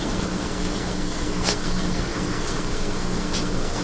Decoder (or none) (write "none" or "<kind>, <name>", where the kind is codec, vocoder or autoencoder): codec, SNAC